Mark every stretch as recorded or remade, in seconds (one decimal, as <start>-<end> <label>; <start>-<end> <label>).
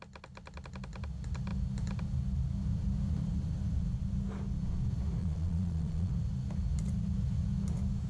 0.0-5.2 recorded; 5.2-6.1 remade; 6.1-8.1 recorded